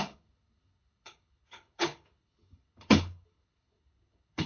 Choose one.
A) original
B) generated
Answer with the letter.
B